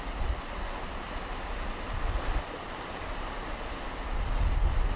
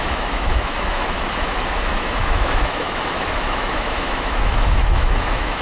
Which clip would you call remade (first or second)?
second